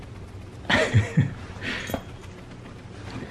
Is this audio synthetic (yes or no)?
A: no